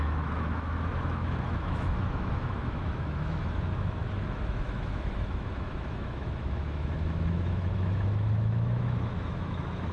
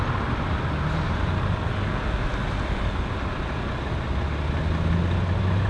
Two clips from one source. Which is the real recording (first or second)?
second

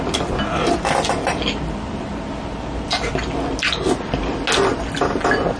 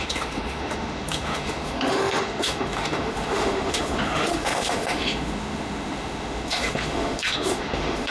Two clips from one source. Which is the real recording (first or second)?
first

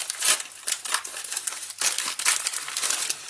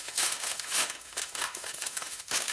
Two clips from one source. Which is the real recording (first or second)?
first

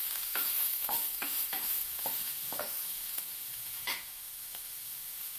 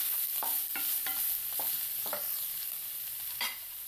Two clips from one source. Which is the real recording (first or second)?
second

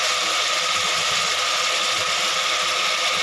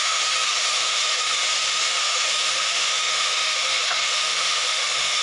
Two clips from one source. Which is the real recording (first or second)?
first